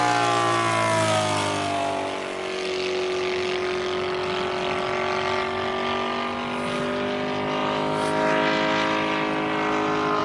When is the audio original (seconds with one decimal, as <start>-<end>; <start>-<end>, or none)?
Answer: 0.0-10.2